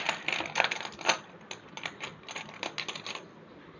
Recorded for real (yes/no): yes